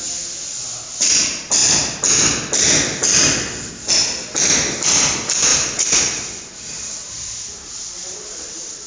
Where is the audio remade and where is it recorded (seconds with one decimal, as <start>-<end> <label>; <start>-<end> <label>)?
0.0-5.5 recorded; 5.5-8.9 remade